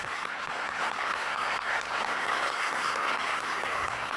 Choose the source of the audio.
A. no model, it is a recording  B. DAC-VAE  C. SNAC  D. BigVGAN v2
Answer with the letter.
C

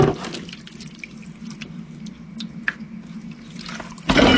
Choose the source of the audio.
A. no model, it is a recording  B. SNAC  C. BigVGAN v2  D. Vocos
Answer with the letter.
A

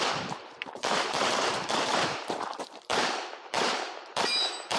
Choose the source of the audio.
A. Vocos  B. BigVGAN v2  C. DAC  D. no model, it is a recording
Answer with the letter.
B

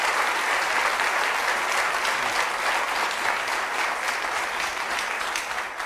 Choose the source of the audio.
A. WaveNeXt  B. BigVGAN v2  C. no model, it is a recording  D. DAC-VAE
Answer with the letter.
C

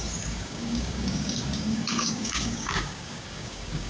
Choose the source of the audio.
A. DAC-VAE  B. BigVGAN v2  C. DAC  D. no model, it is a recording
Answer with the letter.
C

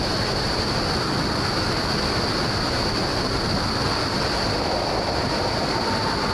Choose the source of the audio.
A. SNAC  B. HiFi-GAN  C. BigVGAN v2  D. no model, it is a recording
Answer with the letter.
D